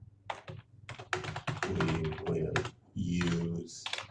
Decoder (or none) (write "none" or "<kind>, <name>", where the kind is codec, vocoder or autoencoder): none